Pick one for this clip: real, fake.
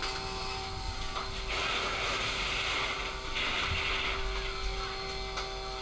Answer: real